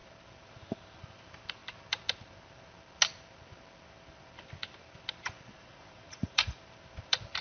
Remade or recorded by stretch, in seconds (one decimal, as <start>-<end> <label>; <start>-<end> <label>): 0.0-5.5 recorded; 5.5-6.6 remade; 6.6-7.4 recorded